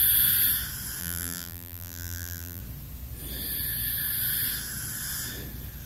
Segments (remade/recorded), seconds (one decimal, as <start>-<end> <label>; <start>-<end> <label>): 0.0-1.0 recorded; 1.0-2.6 remade; 2.6-5.9 recorded